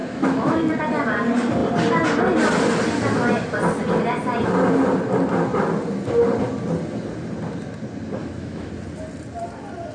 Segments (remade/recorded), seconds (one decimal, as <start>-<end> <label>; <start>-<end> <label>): 0.0-0.7 remade; 0.7-8.2 recorded; 8.2-8.7 remade; 8.7-9.9 recorded